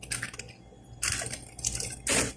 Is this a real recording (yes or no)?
yes